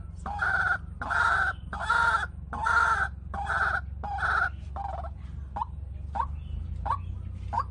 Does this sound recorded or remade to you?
recorded